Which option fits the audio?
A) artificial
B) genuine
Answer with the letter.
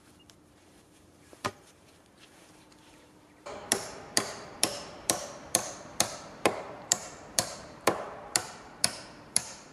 A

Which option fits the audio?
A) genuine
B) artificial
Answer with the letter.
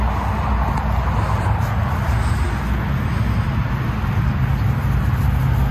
A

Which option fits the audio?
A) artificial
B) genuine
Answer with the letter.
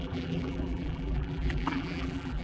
A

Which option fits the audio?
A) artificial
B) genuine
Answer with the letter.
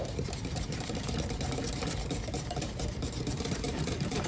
A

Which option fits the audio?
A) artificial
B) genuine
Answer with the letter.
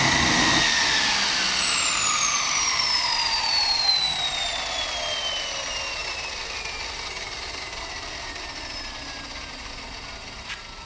B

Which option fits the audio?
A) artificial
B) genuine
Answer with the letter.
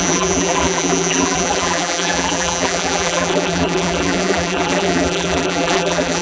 A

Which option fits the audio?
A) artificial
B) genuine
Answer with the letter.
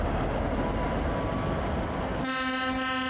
B